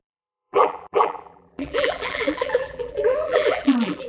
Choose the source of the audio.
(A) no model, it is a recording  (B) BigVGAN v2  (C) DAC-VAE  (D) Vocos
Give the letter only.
B